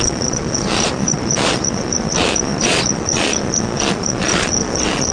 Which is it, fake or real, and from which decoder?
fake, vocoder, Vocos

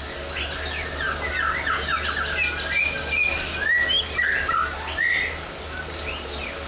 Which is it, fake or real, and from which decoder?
real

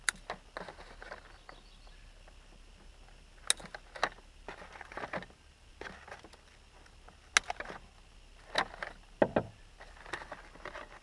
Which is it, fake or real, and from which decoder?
real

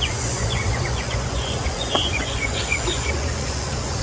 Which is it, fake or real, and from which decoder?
fake, vocoder, Vocos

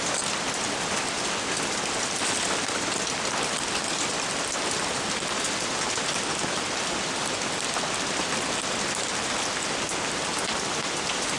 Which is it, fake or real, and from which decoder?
real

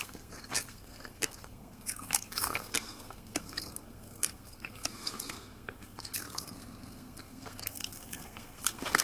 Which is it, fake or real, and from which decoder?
fake, codec, SNAC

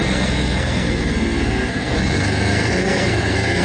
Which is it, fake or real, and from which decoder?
fake, codec, SNAC